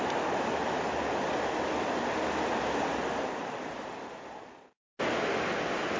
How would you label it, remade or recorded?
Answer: recorded